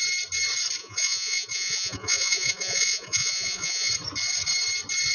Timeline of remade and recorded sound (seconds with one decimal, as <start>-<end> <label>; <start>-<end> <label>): 0.0-0.8 recorded; 0.8-3.9 remade; 3.9-5.1 recorded